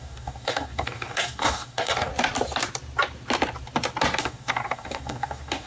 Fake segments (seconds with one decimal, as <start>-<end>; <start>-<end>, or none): 0.0-2.1; 4.2-5.7